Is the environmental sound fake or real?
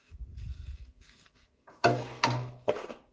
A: fake